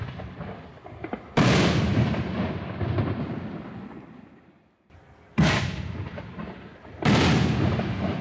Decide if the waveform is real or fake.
fake